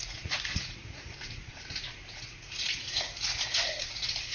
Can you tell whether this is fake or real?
fake